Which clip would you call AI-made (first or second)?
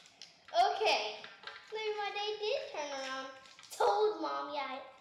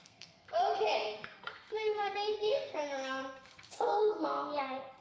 second